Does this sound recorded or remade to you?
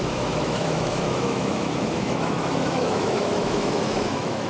remade